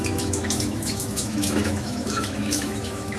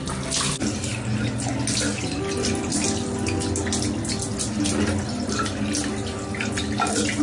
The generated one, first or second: first